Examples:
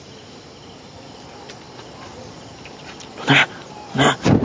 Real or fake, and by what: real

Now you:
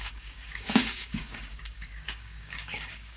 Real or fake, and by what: fake, codec, DAC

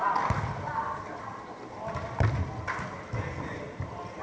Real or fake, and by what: real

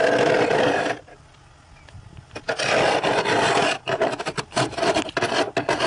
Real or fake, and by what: real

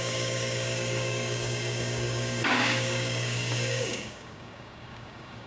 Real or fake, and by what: fake, codec, DAC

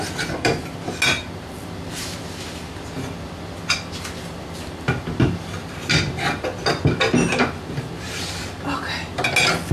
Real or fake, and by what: real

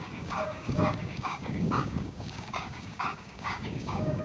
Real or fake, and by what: fake, codec, DAC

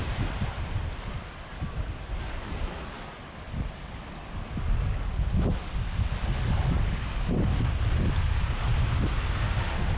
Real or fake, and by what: real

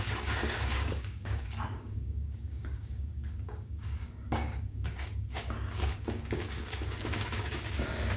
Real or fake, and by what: fake, codec, DAC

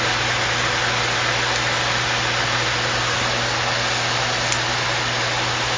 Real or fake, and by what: real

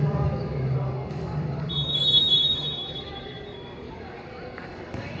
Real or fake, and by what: fake, codec, DAC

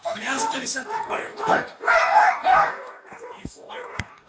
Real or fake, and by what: fake, codec, DAC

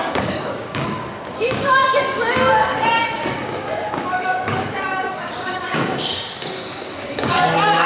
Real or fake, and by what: fake, codec, DAC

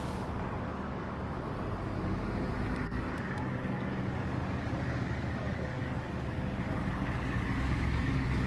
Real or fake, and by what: fake, codec, DAC